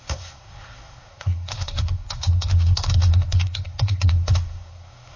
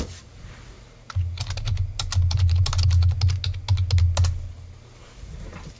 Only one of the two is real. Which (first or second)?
second